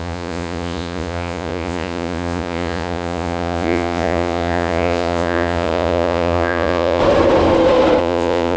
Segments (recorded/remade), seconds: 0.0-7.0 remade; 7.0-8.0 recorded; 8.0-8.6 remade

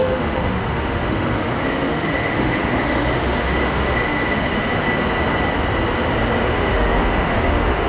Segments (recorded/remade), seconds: 0.0-4.7 remade; 4.7-6.4 recorded; 6.4-7.9 remade

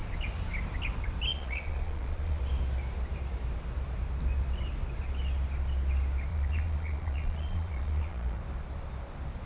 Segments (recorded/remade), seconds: 0.0-1.3 recorded; 1.3-2.4 remade; 2.4-6.3 recorded; 6.3-8.4 remade; 8.4-9.5 recorded

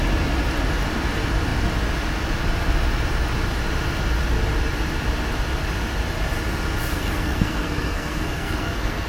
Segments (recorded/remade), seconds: 0.0-6.9 recorded; 6.9-9.1 remade

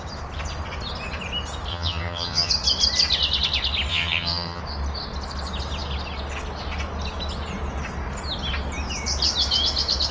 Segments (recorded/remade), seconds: 0.0-1.7 recorded; 1.7-2.5 remade; 2.5-3.9 recorded; 3.9-4.6 remade; 4.6-10.1 recorded

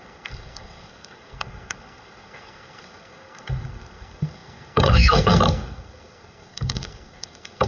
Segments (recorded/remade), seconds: 0.0-7.7 remade